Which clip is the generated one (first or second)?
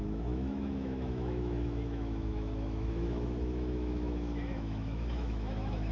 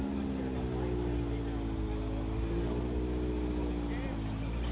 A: first